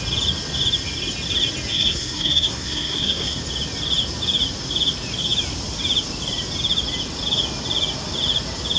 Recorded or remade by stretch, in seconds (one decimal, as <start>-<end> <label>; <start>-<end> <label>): 0.0-1.7 recorded; 1.7-3.4 remade; 3.4-8.8 recorded